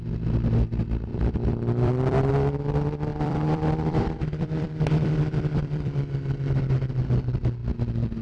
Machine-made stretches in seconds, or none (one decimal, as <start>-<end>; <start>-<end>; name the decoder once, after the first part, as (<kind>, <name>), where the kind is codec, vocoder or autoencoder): 1.1-2.3 (vocoder, BigVGAN v2); 3.1-6.7